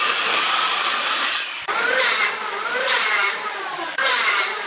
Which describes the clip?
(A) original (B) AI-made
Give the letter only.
A